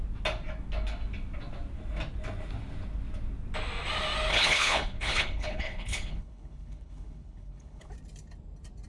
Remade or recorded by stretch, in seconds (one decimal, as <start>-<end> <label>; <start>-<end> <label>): 0.0-4.3 recorded; 4.3-7.9 remade; 7.9-8.9 recorded

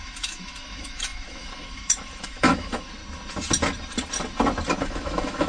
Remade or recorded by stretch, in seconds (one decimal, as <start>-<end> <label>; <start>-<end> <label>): 0.0-3.0 remade; 3.0-4.7 recorded; 4.7-5.5 remade

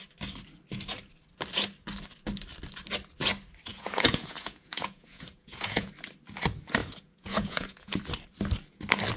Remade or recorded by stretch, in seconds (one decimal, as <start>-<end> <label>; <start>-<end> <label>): 0.0-3.7 recorded; 3.7-5.9 remade; 5.9-6.8 recorded; 6.8-8.0 remade; 8.0-9.2 recorded

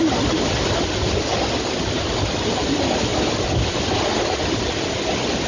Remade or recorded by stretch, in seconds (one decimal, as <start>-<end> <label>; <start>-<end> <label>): 0.0-5.5 recorded